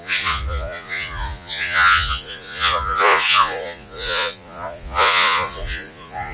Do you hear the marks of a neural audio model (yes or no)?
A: yes